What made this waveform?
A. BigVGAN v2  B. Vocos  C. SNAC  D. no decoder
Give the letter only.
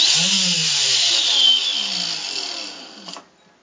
D